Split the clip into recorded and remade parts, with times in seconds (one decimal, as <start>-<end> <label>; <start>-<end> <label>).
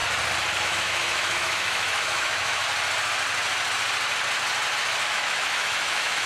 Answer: 0.0-0.6 recorded; 0.6-2.6 remade; 2.6-5.1 recorded; 5.1-6.3 remade